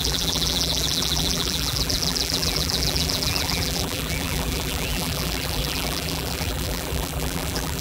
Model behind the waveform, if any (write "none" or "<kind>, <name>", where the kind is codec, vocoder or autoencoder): vocoder, BigVGAN v2